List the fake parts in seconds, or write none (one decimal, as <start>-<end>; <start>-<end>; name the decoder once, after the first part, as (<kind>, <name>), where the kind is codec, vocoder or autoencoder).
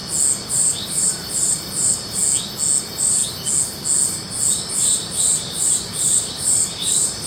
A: 0.5-2.2 (vocoder, BigVGAN v2); 2.8-3.2; 4.7-7.3